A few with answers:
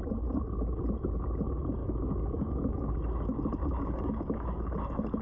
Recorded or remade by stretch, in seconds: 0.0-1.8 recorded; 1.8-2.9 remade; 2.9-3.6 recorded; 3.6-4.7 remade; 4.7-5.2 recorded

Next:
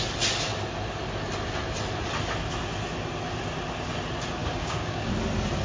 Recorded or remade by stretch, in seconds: 0.0-4.4 recorded; 4.4-5.1 remade; 5.1-5.6 recorded